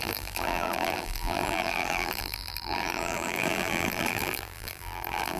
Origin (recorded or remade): remade